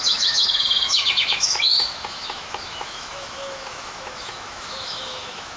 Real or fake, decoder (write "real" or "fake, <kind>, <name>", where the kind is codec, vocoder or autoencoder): fake, autoencoder, DAC-VAE